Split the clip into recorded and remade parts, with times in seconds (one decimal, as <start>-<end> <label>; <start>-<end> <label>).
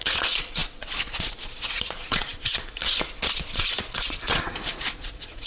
0.0-5.5 remade